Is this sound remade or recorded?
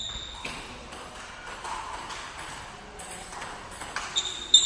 recorded